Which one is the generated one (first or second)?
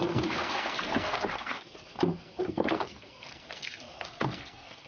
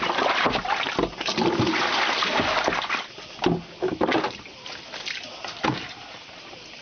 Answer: first